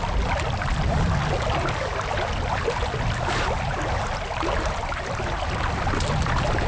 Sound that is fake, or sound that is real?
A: real